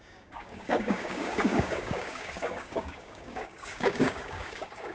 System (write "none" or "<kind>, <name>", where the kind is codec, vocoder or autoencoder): codec, DAC